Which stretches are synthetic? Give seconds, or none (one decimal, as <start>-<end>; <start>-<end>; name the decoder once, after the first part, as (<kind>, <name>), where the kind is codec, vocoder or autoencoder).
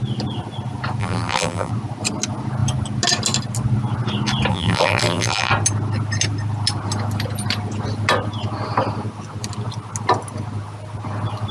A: 1.0-1.7 (vocoder, BigVGAN v2); 4.5-5.5